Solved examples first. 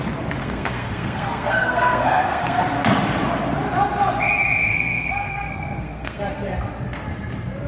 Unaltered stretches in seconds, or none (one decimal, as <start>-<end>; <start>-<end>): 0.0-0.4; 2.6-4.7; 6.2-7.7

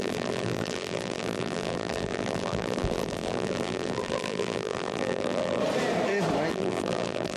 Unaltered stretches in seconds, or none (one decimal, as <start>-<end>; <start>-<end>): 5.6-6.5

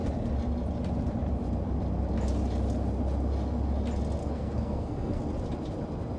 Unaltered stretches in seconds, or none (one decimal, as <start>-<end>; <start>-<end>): 0.0-4.2; 5.2-6.2